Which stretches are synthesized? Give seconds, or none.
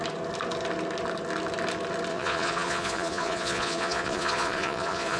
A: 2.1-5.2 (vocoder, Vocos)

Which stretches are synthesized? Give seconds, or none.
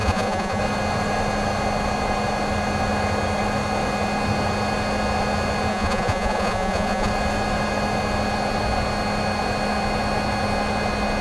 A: 0.0-0.6 (vocoder, Vocos); 5.7-7.1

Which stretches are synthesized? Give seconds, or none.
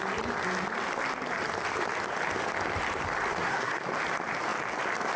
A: 3.3-3.8 (codec, SNAC)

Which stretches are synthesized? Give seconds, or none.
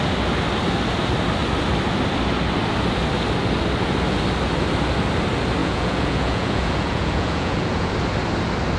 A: 5.6-7.9 (vocoder, Vocos)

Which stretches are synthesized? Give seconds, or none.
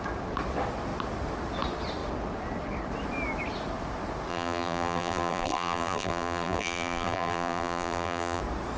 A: 4.3-8.4 (vocoder, BigVGAN v2)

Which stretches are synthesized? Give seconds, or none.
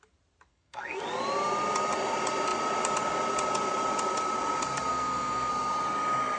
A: 0.5-1.0 (codec, SNAC); 4.9-5.5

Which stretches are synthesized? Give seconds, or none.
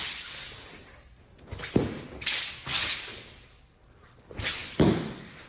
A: none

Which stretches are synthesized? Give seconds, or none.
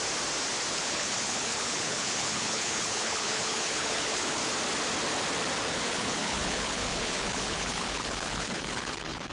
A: 0.7-4.4 (codec, HILCodec); 5.7-9.3